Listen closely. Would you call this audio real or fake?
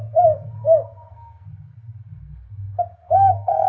fake